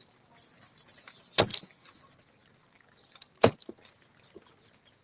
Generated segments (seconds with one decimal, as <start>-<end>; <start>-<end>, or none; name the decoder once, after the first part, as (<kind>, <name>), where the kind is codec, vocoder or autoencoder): 1.5-2.0 (autoencoder, DAC-VAE)